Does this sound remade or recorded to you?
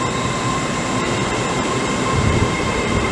remade